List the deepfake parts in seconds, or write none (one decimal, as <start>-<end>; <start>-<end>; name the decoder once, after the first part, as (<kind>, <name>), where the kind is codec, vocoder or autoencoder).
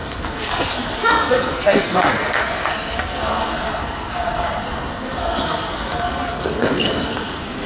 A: 0.0-7.7 (codec, SNAC)